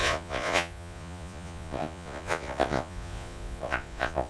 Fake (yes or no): yes